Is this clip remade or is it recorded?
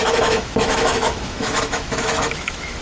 remade